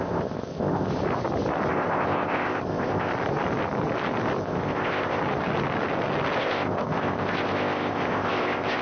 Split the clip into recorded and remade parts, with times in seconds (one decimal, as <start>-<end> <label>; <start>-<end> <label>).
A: 0.0-0.9 remade; 0.9-1.7 recorded; 1.7-3.1 remade; 3.1-4.4 recorded; 4.4-5.2 remade; 5.2-6.4 recorded; 6.4-8.8 remade